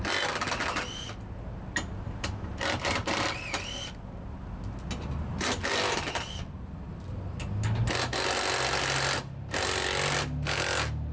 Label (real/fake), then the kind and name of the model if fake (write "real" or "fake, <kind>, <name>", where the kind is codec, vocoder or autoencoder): real